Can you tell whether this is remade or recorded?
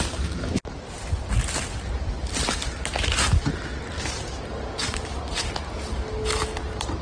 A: recorded